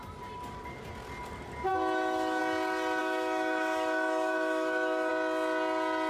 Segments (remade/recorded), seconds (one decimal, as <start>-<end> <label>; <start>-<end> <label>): 0.0-1.7 recorded; 1.7-2.4 remade; 2.4-3.0 recorded; 3.0-5.1 remade; 5.1-6.1 recorded